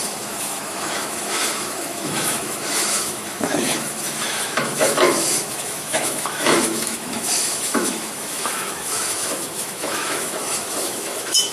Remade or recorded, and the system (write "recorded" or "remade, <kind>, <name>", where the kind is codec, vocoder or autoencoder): remade, autoencoder, DAC-VAE